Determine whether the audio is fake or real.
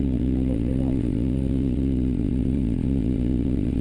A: fake